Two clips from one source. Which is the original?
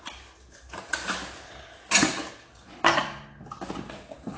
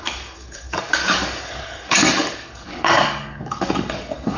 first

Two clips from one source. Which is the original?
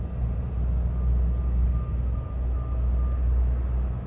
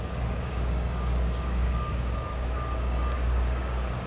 first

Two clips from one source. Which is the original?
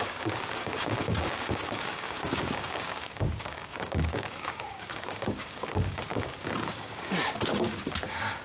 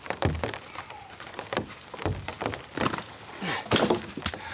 second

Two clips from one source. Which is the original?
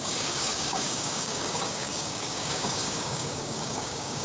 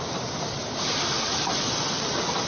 second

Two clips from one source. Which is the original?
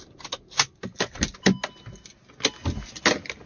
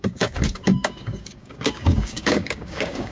first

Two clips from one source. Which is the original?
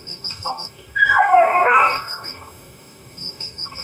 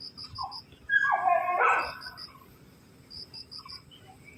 second